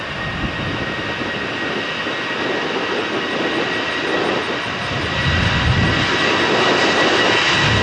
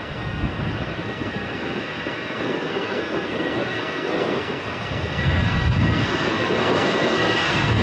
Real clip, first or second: first